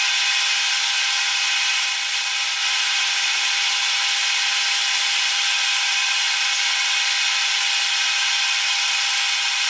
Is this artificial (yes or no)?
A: no